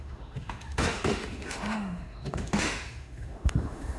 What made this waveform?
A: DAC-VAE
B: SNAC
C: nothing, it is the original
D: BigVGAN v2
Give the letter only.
A